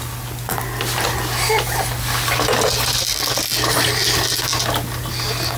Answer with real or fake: real